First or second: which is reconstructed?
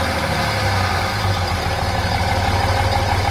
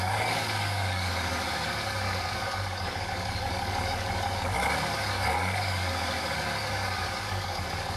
second